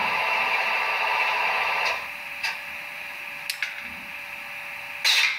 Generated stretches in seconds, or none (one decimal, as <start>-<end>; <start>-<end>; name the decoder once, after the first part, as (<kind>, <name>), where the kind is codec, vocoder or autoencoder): 0.0-3.2 (vocoder, BigVGAN v2)